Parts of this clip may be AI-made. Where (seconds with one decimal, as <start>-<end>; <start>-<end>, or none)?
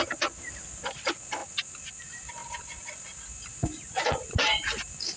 0.0-1.4; 2.0-2.4; 4.0-5.2